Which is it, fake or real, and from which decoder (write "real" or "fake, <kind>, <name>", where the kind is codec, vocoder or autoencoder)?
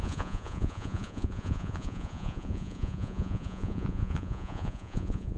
fake, vocoder, Vocos